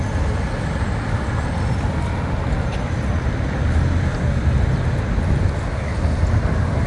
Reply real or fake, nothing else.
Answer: real